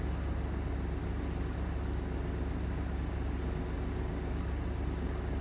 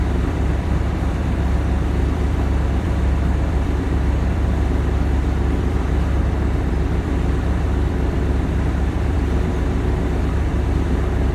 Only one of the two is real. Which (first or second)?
first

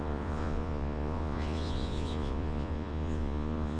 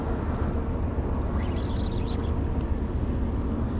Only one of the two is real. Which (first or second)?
second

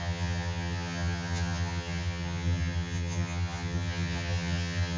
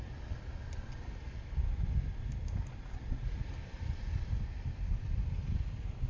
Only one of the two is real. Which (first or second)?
second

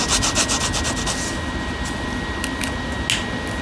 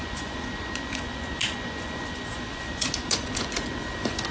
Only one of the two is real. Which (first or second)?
first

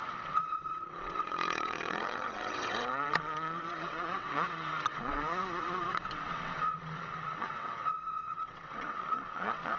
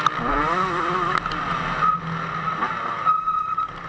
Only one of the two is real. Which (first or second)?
second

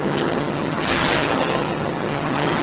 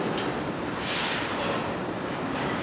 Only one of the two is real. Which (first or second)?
second